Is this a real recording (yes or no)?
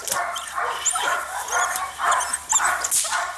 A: yes